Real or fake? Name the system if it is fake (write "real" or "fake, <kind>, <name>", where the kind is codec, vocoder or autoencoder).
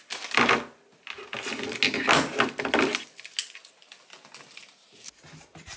real